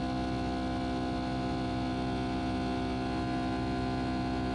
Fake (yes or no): no